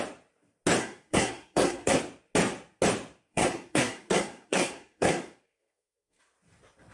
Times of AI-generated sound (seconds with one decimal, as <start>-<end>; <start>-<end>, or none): 0.8-2.0; 3.3-6.2